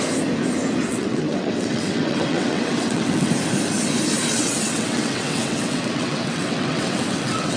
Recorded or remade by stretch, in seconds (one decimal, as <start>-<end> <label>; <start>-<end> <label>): 0.0-0.9 recorded; 0.9-3.3 remade; 3.3-4.3 recorded; 4.3-7.6 remade